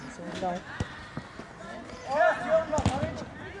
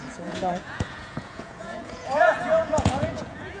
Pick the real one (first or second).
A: first